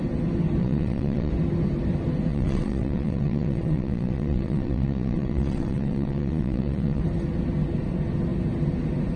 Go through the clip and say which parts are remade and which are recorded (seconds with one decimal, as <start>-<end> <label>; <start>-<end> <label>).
0.0-0.6 recorded; 0.6-1.3 remade; 1.3-2.3 recorded; 2.3-7.0 remade; 7.0-9.2 recorded

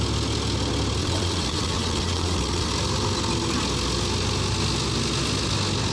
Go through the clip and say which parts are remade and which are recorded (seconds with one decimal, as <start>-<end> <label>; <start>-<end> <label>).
0.0-1.0 recorded; 1.0-2.7 remade; 2.7-5.9 recorded

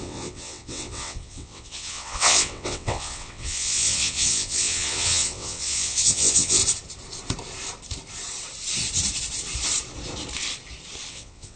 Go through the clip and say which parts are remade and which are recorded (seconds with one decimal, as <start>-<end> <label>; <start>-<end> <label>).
0.0-6.6 remade; 6.6-11.1 recorded; 11.1-11.6 remade

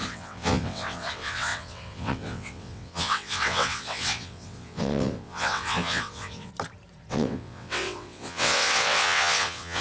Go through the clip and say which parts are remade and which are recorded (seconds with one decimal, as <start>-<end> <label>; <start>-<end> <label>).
0.0-6.5 remade; 6.5-7.1 recorded; 7.1-9.8 remade

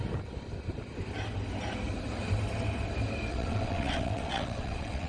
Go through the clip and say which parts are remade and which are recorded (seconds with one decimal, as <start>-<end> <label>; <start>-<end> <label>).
0.0-3.3 recorded; 3.3-5.1 remade

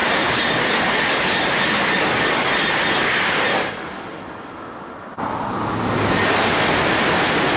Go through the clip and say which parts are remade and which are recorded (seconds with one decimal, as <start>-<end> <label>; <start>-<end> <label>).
0.0-7.6 recorded

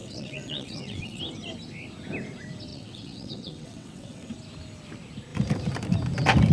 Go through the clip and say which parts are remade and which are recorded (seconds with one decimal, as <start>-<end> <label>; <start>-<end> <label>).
0.0-1.2 remade; 1.2-2.7 recorded; 2.7-4.3 remade; 4.3-6.5 recorded